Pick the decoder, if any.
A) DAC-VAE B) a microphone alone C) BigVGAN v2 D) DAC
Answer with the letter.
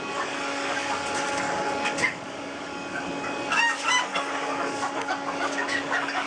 D